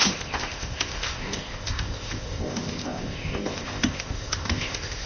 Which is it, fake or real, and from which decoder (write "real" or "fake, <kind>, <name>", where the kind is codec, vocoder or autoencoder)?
fake, codec, ZipCodec